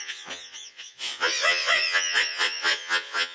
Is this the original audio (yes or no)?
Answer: no